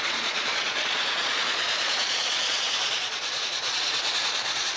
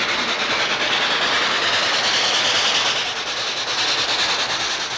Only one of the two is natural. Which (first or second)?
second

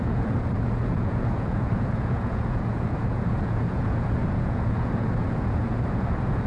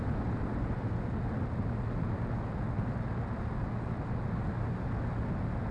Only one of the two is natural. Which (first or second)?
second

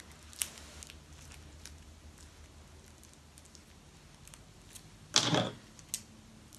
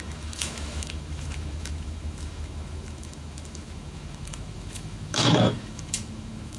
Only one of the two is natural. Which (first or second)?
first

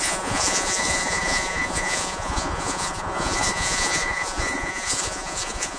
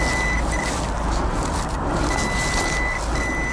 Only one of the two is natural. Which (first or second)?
second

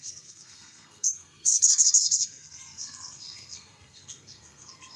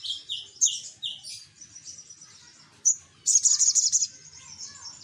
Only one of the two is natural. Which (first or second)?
second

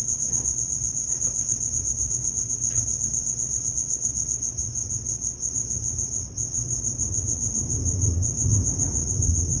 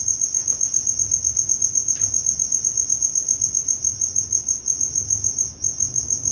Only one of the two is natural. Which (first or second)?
second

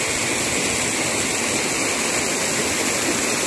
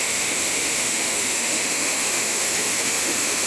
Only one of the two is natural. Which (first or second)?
first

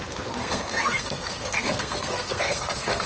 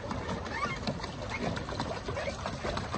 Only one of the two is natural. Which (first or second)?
second